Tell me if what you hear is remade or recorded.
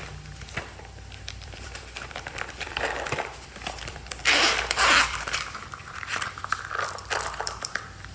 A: remade